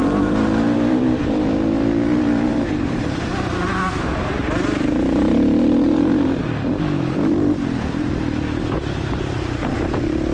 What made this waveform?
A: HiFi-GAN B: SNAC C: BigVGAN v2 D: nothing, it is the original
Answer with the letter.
C